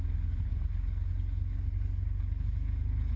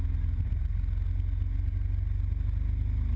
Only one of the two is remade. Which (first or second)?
first